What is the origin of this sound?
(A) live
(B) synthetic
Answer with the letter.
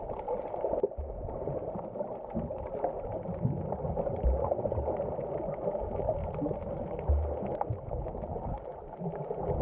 A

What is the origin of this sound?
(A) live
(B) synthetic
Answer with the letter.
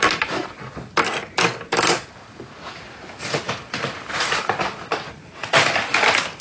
B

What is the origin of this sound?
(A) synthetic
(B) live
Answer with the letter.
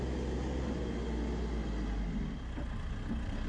B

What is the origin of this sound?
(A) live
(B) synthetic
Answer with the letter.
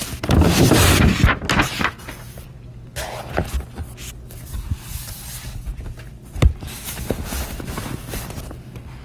A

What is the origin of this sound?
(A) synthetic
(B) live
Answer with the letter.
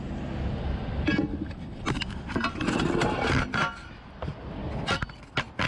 B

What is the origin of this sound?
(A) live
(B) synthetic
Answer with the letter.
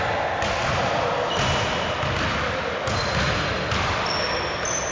A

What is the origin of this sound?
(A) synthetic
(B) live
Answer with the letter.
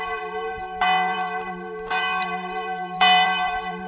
A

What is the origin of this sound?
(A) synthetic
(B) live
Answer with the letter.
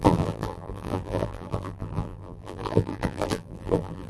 A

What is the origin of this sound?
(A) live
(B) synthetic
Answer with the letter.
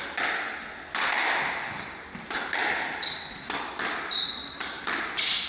A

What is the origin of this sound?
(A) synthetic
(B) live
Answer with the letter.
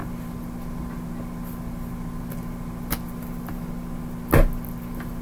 B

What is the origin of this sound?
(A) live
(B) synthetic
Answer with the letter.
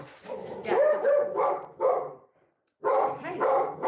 B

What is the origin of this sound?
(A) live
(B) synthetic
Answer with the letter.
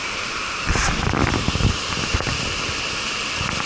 B